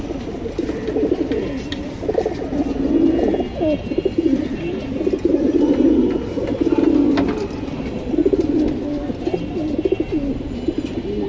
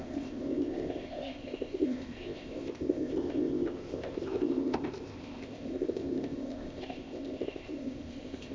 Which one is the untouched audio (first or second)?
first